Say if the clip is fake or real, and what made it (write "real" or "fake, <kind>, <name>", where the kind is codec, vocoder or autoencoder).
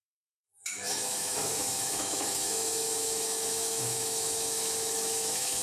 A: fake, autoencoder, DAC-VAE